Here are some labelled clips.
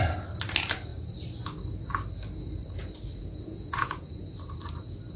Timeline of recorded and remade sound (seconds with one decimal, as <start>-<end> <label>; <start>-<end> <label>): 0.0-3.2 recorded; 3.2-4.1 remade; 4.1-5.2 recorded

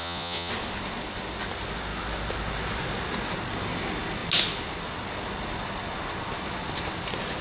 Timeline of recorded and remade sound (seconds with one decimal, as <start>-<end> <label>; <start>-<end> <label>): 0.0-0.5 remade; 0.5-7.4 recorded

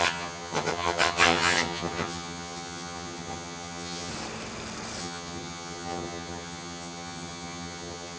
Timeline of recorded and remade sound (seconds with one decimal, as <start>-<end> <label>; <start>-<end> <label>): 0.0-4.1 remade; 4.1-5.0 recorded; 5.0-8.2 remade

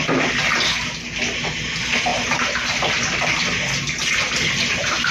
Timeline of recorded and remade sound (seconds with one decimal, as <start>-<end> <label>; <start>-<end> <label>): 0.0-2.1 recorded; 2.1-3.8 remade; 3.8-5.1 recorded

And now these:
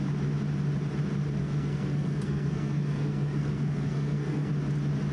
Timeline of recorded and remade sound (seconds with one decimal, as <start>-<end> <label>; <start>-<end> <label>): 0.0-1.4 recorded; 1.4-4.5 remade; 4.5-5.1 recorded

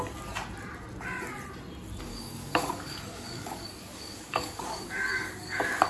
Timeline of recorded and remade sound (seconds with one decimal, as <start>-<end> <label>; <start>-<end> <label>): 0.0-2.1 recorded; 2.1-5.9 remade

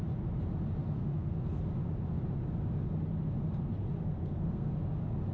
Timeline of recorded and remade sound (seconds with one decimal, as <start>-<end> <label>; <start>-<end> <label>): 0.0-1.0 recorded; 1.0-1.6 remade; 1.6-4.0 recorded; 4.0-4.7 remade; 4.7-5.3 recorded

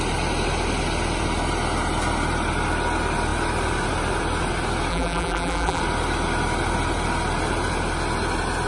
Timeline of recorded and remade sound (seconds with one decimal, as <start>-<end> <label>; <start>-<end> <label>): 0.0-4.9 recorded; 4.9-5.8 remade; 5.8-8.7 recorded